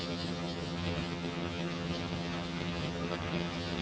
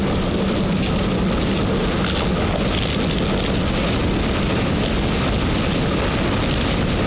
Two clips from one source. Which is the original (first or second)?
second